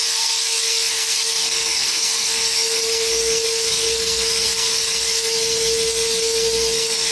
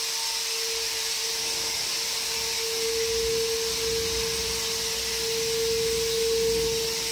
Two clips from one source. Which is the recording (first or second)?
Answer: second